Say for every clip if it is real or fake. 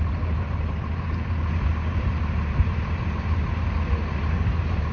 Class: fake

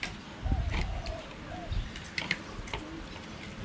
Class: real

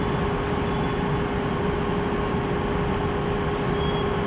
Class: real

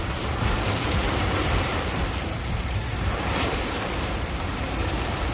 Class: fake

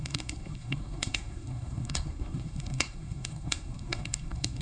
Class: fake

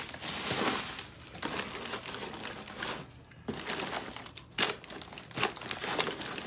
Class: real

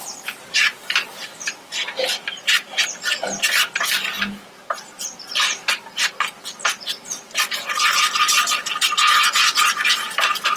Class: fake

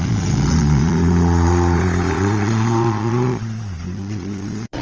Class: fake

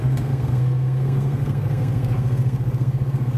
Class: fake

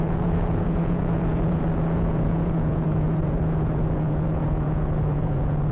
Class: fake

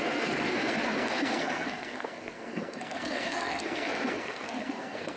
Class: fake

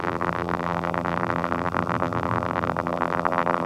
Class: fake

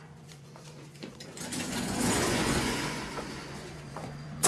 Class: fake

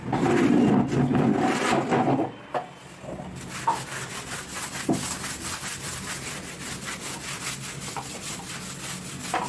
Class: real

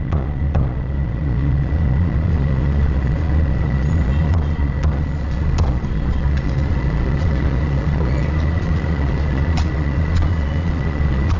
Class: fake